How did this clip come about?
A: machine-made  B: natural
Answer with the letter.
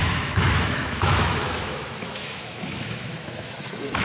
A